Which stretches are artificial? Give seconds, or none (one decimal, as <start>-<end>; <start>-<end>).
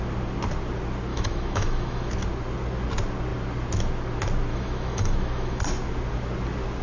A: 1.1-2.1; 4.5-5.6